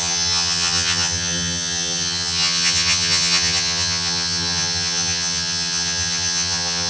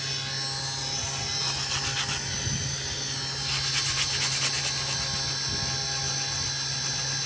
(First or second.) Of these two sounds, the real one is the second